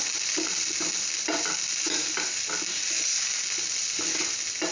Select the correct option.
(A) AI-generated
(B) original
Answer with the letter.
B